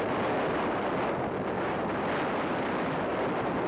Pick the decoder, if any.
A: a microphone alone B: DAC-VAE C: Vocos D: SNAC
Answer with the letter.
A